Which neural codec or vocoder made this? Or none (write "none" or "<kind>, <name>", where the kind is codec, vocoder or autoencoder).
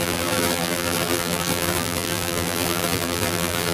vocoder, BigVGAN v2